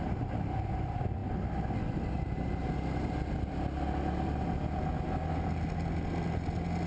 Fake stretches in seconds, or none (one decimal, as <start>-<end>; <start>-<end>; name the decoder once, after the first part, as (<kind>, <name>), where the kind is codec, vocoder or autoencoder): none